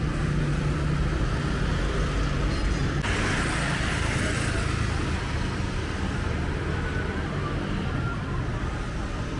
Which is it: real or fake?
real